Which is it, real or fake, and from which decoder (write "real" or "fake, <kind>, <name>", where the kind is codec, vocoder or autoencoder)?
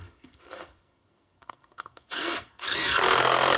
fake, codec, SNAC